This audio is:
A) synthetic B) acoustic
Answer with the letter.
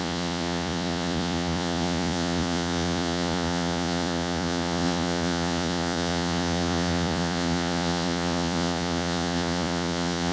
A